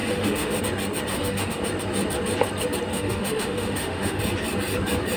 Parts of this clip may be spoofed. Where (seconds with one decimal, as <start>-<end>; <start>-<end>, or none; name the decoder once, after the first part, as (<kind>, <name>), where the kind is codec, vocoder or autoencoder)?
0.0-0.6 (autoencoder, DAC-VAE); 1.1-1.6; 2.9-4.2